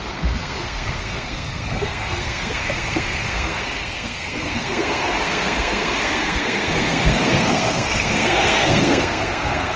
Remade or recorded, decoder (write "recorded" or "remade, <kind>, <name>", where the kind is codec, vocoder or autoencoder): remade, codec, SNAC